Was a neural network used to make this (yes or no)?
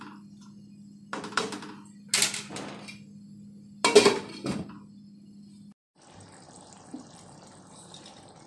no